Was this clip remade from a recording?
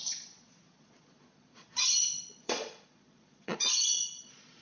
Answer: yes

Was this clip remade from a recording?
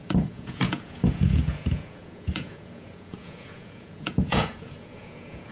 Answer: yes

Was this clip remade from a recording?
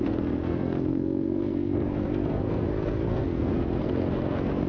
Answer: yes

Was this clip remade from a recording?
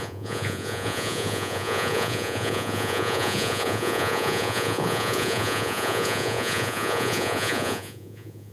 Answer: yes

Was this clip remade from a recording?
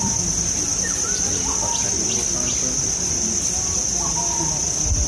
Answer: no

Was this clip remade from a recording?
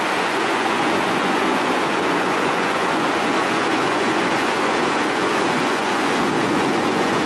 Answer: yes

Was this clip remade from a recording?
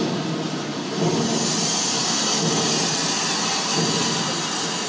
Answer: no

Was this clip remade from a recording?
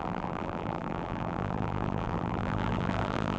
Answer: yes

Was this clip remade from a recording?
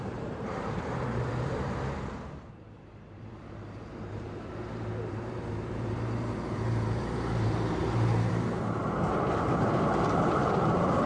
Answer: yes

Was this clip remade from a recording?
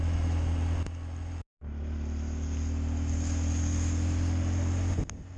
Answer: no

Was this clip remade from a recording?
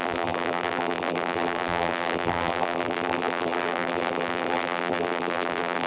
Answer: yes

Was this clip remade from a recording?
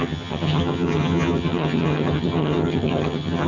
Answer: yes